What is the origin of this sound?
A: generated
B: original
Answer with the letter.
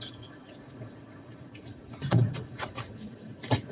A